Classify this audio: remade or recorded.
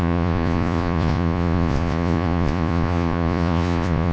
remade